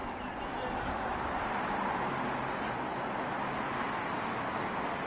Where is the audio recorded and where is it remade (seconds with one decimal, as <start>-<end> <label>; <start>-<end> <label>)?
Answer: 0.0-5.1 recorded